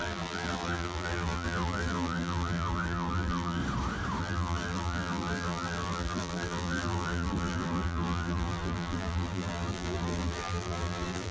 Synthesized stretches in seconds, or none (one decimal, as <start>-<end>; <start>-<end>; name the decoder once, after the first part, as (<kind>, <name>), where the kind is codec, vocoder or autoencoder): 0.0-3.6 (vocoder, BigVGAN v2); 4.2-11.3